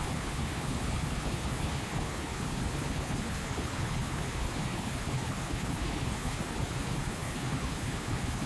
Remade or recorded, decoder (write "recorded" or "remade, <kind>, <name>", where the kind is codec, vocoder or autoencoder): remade, codec, HILCodec